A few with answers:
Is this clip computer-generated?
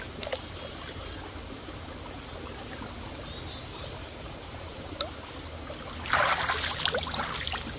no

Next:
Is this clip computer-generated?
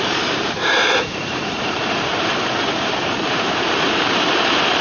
yes